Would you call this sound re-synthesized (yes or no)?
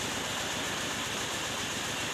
no